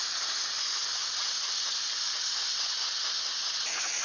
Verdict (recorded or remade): recorded